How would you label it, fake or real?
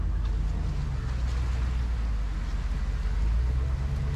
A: real